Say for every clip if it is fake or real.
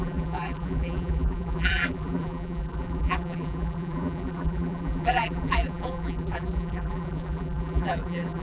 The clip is fake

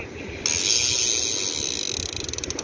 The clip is real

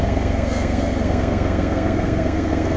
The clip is fake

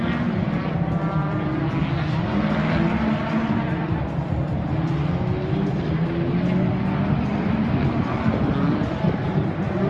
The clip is real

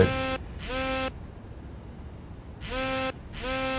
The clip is real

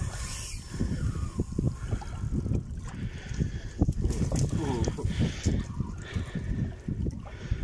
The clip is real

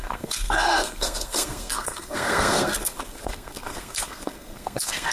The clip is fake